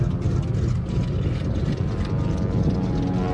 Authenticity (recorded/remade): recorded